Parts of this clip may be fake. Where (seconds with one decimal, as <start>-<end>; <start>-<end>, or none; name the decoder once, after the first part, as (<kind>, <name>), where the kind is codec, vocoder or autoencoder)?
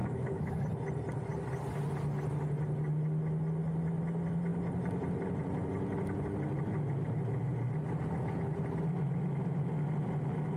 0.0-0.6 (autoencoder, DAC-VAE)